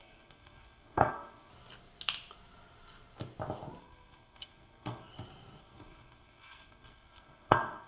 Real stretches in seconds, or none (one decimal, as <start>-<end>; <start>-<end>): 1.5-3.8; 5.1-5.6